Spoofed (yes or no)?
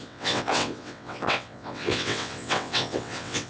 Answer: yes